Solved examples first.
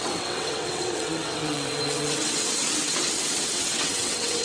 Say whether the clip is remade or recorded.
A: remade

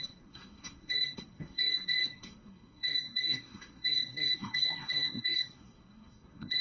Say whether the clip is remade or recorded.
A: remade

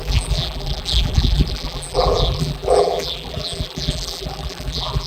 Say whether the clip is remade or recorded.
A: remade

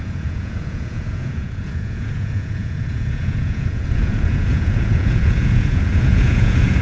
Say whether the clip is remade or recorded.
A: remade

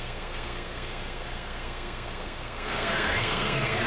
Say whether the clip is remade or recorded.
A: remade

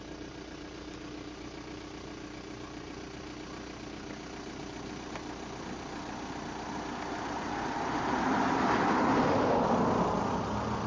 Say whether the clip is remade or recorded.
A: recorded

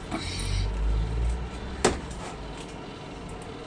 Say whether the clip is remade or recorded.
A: recorded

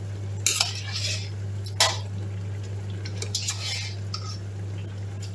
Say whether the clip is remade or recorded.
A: recorded